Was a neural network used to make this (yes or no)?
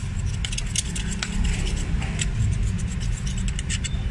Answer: no